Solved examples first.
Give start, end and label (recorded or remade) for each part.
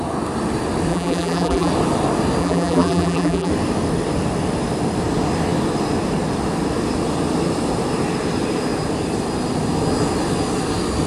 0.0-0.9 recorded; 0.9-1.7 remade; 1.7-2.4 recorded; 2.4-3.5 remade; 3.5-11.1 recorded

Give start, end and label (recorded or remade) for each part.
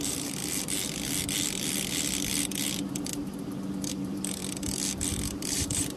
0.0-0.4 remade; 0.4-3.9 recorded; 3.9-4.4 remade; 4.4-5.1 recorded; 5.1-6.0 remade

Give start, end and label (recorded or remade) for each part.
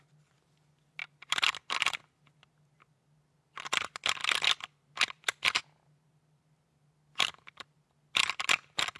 0.0-9.0 recorded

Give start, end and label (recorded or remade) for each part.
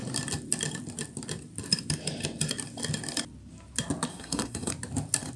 0.0-4.1 recorded; 4.1-4.7 remade; 4.7-5.4 recorded